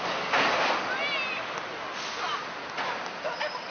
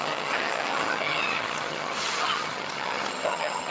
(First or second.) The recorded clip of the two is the first